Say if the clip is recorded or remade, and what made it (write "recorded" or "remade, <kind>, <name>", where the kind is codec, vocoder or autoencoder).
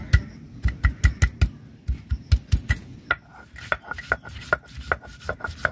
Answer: recorded